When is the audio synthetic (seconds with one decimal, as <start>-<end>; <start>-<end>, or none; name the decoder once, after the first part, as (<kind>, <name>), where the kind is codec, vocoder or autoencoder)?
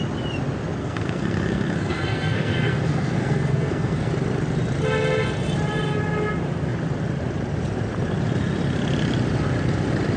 0.8-4.1 (codec, SNAC)